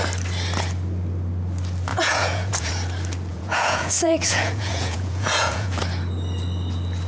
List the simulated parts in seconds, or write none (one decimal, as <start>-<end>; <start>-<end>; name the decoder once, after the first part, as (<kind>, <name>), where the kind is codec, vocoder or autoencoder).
1.9-2.7 (vocoder, Vocos); 3.3-5.8